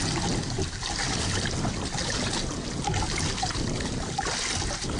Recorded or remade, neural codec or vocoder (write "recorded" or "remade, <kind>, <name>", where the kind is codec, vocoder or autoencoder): recorded